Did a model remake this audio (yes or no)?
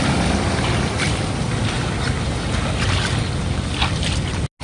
no